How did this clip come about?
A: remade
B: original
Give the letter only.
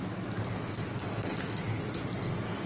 B